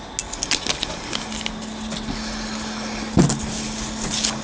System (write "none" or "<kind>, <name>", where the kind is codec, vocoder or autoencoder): none